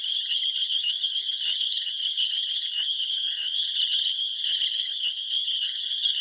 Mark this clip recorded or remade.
remade